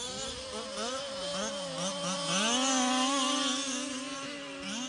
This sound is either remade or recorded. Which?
recorded